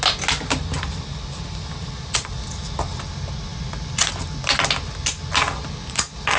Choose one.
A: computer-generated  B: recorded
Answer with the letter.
B